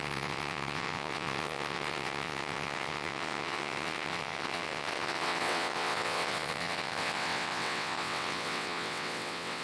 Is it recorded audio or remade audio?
remade